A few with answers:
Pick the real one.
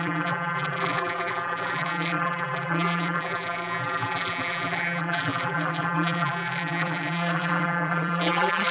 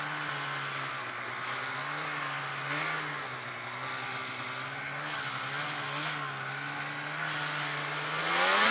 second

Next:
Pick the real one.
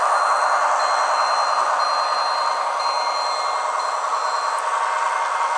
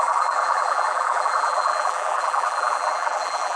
first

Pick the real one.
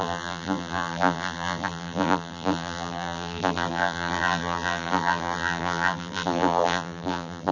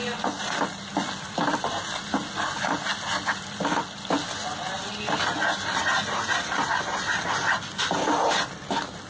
second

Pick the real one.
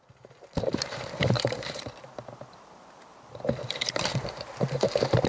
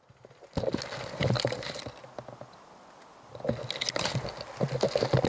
second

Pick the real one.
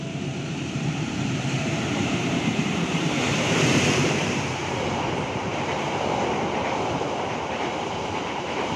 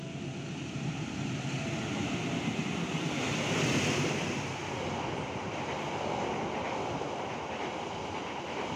second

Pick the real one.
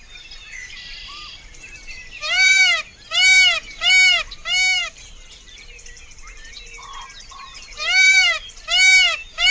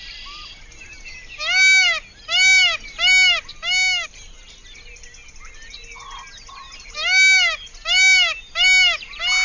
second